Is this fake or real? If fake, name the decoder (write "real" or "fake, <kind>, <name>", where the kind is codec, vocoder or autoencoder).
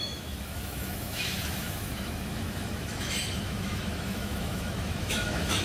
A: fake, autoencoder, DAC-VAE